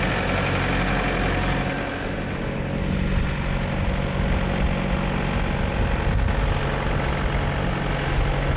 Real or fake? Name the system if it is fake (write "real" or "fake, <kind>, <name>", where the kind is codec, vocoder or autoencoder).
real